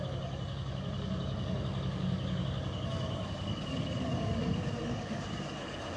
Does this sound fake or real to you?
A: fake